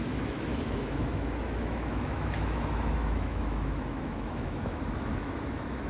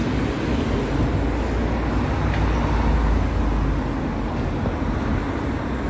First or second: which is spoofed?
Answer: first